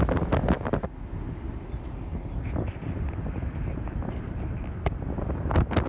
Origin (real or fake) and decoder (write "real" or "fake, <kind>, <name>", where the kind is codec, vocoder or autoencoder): real